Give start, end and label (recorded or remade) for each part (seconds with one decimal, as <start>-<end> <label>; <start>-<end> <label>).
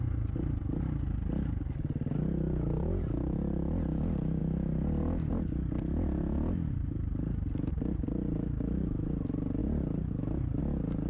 0.0-11.1 recorded